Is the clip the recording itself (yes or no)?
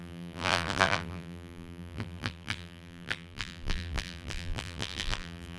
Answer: no